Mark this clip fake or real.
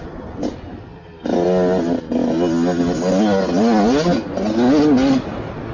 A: real